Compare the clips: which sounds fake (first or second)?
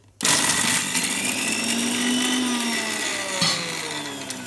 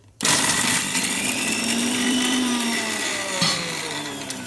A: second